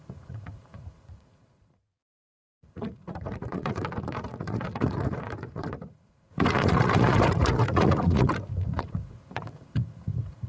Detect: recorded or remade remade